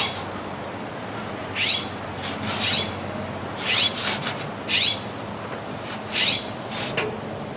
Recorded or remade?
recorded